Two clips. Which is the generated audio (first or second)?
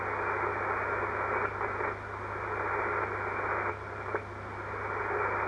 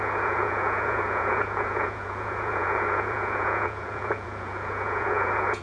second